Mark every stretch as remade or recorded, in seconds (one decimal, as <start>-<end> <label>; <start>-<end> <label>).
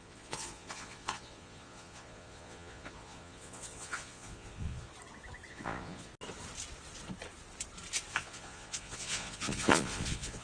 0.0-4.9 remade; 4.9-5.5 recorded; 5.5-6.1 remade; 6.1-8.1 recorded; 8.1-10.4 remade